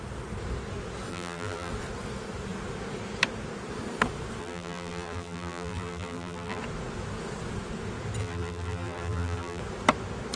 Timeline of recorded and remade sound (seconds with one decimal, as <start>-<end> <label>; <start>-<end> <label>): 0.0-1.1 recorded; 1.1-1.7 remade; 1.7-4.4 recorded; 4.4-6.6 remade; 6.6-8.2 recorded; 8.2-9.6 remade; 9.6-10.4 recorded